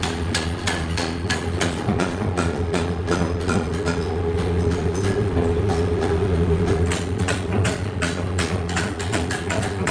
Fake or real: fake